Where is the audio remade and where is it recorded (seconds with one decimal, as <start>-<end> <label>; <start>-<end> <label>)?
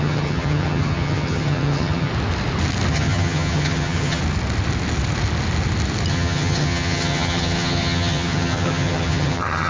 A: 0.0-2.1 remade; 2.1-2.9 recorded; 2.9-4.2 remade; 4.2-6.1 recorded; 6.1-9.7 remade